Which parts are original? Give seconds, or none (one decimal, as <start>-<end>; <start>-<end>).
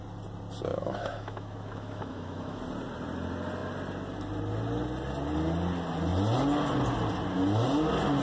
0.0-0.7; 2.6-8.2